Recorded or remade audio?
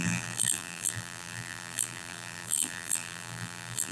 remade